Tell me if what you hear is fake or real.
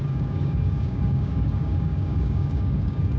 fake